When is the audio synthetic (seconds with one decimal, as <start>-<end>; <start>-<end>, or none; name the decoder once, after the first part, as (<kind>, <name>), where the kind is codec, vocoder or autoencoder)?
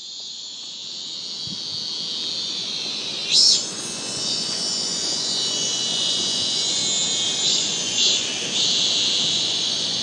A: 0.0-0.8 (vocoder, Vocos); 2.4-6.8; 7.5-8.3; 9.3-10.0